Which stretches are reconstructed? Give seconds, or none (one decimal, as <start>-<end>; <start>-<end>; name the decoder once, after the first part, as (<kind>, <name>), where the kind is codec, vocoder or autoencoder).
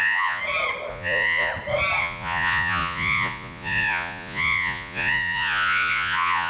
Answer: 0.0-0.4 (vocoder, Vocos); 0.9-1.5; 2.0-6.5